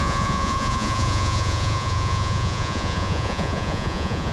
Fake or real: fake